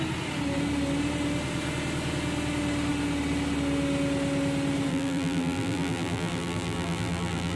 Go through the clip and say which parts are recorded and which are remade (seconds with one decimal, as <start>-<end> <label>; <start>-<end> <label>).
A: 0.0-4.9 recorded; 4.9-7.6 remade